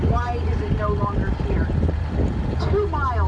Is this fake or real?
real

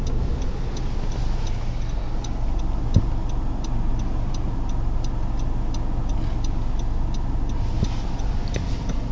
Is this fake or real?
real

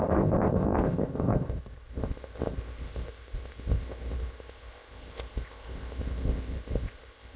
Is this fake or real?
fake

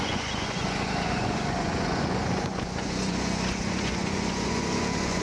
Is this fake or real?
fake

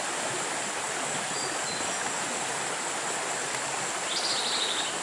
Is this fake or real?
real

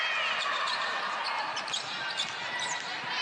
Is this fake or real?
real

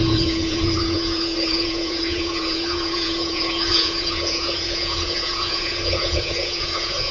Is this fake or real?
fake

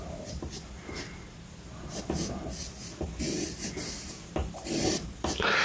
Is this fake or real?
real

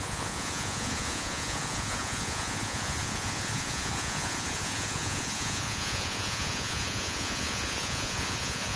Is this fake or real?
fake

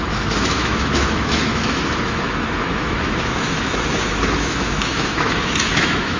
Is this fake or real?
fake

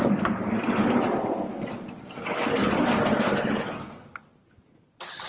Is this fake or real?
real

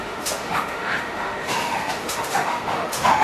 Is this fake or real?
fake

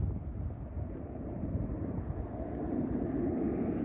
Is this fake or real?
real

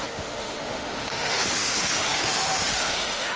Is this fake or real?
fake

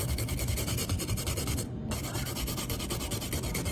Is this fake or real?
real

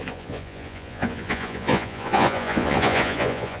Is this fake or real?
fake